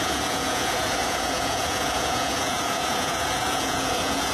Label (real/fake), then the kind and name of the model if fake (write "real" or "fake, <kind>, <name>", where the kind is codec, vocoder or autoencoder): fake, vocoder, Vocos